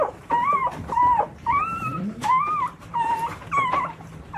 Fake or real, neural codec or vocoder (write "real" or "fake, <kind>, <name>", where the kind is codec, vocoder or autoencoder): fake, vocoder, BigVGAN v2